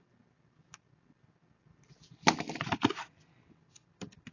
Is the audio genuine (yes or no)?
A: yes